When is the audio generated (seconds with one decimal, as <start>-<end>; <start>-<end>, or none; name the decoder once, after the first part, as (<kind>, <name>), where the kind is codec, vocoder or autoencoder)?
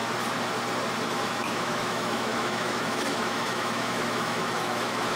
1.1-5.2 (autoencoder, DAC-VAE)